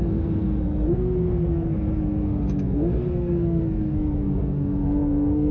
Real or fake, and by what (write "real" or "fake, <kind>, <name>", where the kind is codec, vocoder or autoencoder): fake, codec, SNAC